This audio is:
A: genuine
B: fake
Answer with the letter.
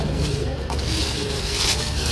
B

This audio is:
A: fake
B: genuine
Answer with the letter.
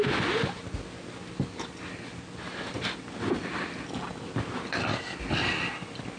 B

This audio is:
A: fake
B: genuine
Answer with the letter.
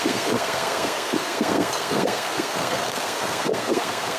A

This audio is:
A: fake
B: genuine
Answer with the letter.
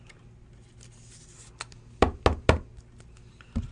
B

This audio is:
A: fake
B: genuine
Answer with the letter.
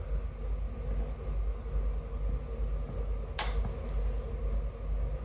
B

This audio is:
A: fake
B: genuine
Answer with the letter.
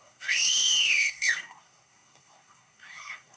A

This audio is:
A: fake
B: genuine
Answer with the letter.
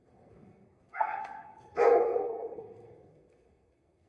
A